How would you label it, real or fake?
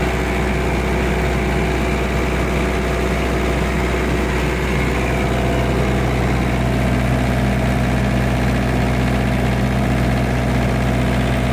real